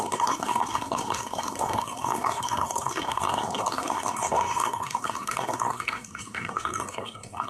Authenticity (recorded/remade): remade